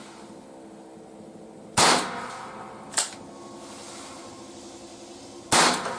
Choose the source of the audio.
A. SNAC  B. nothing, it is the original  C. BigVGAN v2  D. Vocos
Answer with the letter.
B